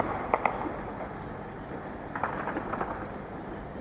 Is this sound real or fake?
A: real